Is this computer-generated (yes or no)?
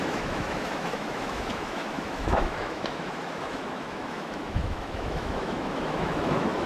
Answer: yes